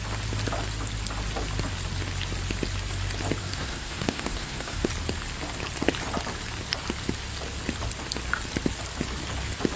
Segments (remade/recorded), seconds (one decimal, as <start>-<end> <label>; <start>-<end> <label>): 0.0-3.4 recorded; 3.4-4.9 remade; 4.9-9.8 recorded